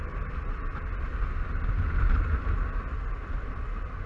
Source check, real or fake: real